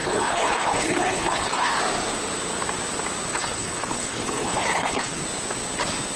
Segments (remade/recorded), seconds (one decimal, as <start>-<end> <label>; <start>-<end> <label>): 0.0-1.8 remade; 1.8-3.3 recorded; 3.3-5.2 remade; 5.2-6.2 recorded